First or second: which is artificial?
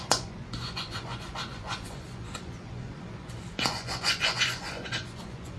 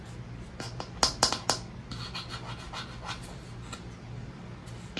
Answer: first